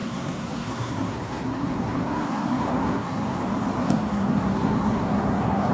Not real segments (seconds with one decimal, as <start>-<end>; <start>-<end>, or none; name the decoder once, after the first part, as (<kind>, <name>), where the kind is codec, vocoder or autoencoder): 0.0-3.4 (codec, SNAC); 3.8-5.7